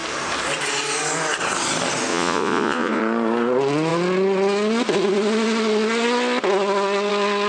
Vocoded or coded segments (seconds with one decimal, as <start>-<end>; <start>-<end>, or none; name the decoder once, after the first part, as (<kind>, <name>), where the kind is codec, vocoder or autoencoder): 2.1-3.0 (vocoder, Vocos)